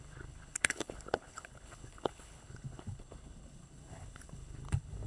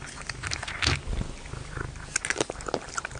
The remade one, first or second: first